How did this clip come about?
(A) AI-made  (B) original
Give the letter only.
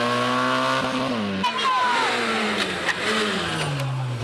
B